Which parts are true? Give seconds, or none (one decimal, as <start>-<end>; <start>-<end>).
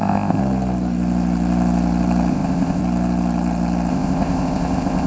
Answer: 0.4-2.3; 2.8-3.9